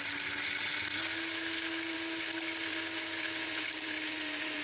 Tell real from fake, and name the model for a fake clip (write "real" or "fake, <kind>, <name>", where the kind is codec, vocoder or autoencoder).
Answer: real